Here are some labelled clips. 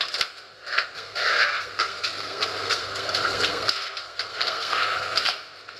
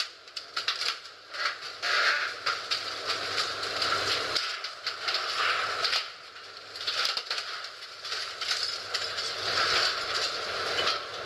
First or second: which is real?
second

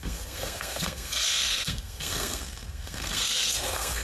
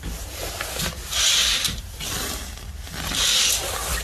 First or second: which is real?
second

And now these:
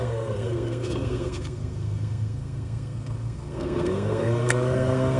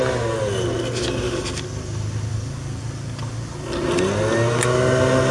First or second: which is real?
second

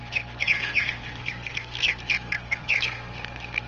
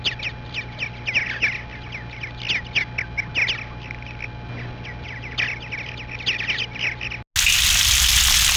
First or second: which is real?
second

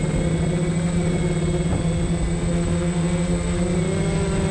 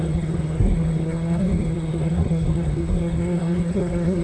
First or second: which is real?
first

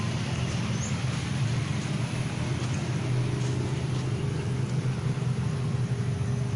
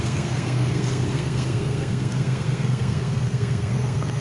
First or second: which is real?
first